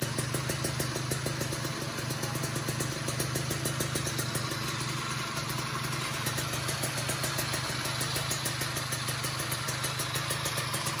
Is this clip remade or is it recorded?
recorded